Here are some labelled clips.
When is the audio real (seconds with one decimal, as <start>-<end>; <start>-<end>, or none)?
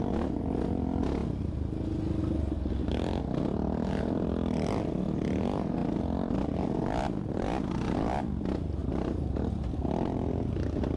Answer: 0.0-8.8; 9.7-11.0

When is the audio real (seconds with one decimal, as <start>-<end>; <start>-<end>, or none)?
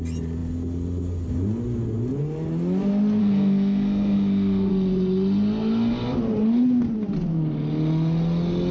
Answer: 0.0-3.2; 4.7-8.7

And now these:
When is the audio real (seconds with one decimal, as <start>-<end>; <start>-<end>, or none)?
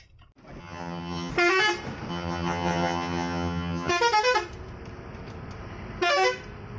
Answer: 0.0-0.6; 1.3-2.1; 3.9-6.8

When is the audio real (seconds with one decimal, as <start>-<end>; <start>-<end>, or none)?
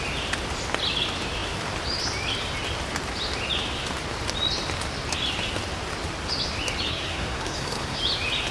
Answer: 0.0-6.9; 8.0-8.5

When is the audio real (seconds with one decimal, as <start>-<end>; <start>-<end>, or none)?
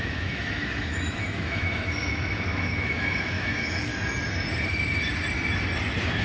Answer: 3.9-6.2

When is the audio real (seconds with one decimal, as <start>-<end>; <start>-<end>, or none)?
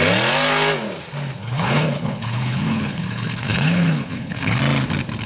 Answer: 0.0-1.4; 4.6-5.3